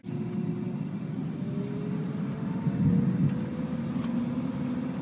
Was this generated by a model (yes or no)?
no